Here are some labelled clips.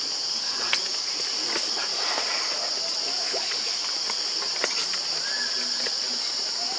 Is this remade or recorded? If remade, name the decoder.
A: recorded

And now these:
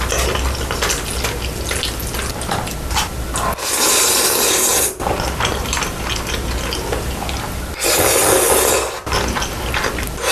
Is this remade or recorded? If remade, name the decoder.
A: recorded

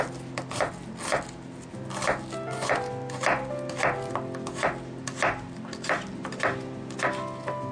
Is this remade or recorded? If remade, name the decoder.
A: recorded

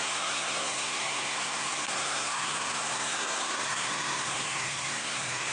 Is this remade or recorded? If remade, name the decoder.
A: remade, codec, SNAC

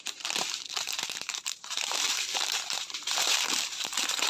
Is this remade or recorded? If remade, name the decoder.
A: remade, vocoder, BigVGAN v2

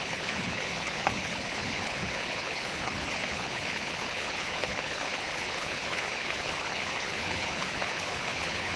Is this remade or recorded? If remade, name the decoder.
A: remade, codec, HILCodec